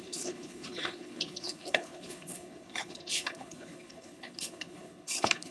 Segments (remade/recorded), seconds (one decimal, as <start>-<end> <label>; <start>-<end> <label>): 0.0-5.5 remade